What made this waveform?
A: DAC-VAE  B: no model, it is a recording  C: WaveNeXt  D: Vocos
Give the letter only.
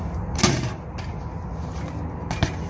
B